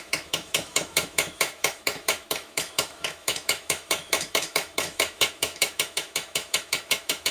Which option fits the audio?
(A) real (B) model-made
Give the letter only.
B